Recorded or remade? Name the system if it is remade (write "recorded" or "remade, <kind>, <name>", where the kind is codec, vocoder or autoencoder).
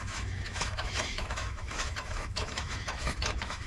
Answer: remade, autoencoder, DAC-VAE